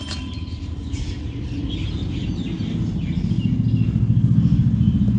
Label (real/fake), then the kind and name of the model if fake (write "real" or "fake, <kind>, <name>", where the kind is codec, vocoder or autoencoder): real